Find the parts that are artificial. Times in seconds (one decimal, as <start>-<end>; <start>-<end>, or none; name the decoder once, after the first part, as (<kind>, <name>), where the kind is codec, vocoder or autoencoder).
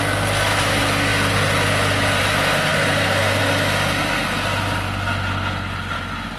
none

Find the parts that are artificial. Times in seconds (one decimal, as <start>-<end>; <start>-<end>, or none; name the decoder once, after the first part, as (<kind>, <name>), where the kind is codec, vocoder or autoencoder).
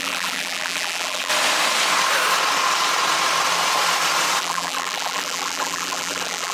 0.0-1.3 (vocoder, BigVGAN v2); 4.4-6.5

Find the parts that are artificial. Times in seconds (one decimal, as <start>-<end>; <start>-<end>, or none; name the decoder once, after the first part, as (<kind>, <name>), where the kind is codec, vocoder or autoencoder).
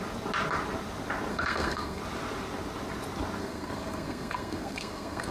1.3-2.0 (codec, SNAC); 3.4-5.3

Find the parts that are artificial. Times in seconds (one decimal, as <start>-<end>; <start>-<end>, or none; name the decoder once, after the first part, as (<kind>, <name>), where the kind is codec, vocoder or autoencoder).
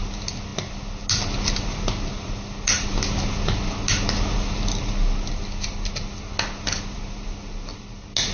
none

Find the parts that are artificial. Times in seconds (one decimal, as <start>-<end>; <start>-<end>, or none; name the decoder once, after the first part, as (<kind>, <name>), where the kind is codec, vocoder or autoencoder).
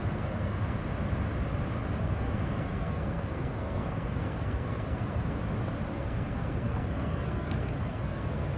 0.0-0.8 (codec, SNAC); 2.0-5.4; 5.9-8.6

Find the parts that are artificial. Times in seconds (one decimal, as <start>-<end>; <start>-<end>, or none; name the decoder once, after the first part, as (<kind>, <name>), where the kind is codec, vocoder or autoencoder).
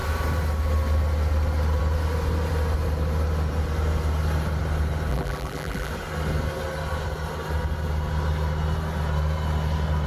5.1-5.9 (vocoder, BigVGAN v2)